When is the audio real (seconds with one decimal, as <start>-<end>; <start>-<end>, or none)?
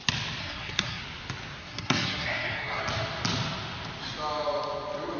0.0-0.4; 1.0-1.6; 2.8-5.2